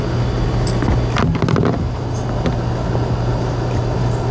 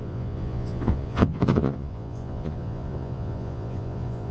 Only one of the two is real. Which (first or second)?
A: first